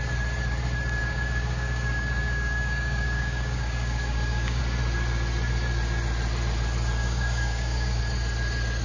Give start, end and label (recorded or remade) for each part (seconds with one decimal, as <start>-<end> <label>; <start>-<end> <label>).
0.0-1.0 recorded; 1.0-4.6 remade; 4.6-7.0 recorded; 7.0-8.0 remade; 8.0-8.8 recorded